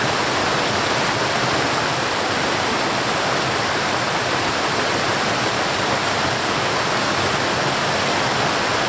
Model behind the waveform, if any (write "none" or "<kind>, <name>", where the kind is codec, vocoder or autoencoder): none